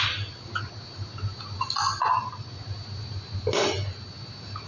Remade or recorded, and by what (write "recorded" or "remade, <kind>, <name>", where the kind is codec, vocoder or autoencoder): recorded